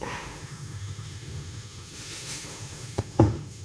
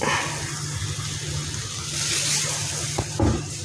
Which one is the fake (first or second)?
first